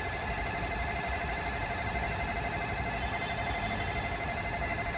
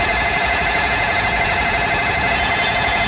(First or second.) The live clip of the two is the first